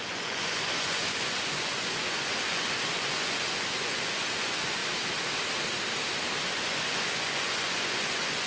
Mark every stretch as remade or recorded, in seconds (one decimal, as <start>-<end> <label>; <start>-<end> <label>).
0.0-4.8 remade; 4.8-6.5 recorded; 6.5-8.5 remade